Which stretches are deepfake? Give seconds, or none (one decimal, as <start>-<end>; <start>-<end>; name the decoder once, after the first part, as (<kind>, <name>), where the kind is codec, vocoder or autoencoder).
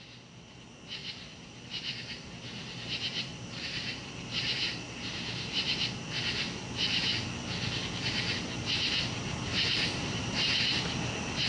1.0-2.4 (vocoder, BigVGAN v2); 3.3-6.2; 9.5-10.6